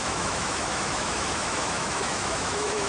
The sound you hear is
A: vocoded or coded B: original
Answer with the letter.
A